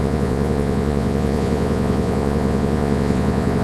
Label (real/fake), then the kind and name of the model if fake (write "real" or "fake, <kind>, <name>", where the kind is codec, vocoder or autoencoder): fake, vocoder, Vocos